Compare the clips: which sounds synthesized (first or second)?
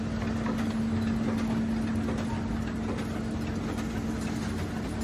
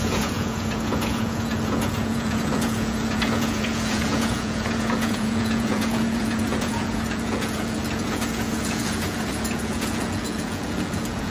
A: second